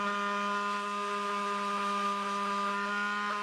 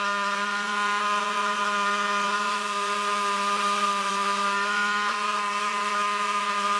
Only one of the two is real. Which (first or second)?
first